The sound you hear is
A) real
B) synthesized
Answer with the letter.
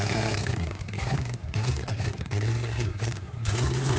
B